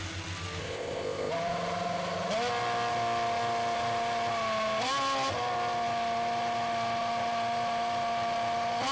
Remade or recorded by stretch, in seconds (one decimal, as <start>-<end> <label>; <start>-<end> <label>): 0.0-0.6 recorded; 0.6-1.3 remade; 1.3-8.9 recorded